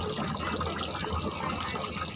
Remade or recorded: recorded